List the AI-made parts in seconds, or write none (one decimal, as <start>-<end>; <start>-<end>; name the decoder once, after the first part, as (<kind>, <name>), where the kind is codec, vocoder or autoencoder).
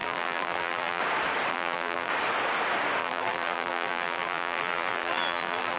0.0-1.0 (vocoder, BigVGAN v2); 1.5-2.1; 3.0-5.8